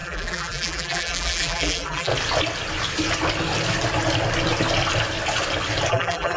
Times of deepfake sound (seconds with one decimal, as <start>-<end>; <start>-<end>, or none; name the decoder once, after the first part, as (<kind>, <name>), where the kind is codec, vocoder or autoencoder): 0.0-2.1 (vocoder, BigVGAN v2); 5.9-6.4